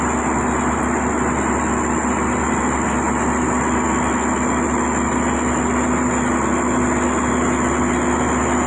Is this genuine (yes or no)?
yes